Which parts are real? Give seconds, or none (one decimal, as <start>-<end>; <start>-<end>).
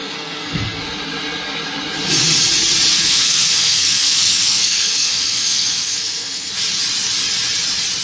0.8-2.9; 6.5-8.0